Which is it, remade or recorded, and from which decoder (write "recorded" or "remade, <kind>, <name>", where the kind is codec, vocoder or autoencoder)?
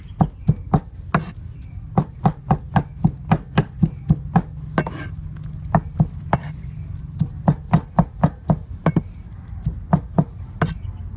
recorded